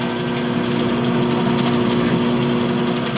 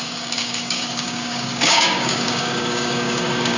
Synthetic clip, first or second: second